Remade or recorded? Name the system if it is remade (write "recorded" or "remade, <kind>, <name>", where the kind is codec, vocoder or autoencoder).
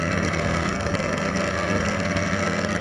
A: remade, codec, SNAC